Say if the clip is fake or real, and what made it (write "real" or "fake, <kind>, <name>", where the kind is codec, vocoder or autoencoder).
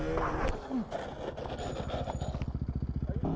real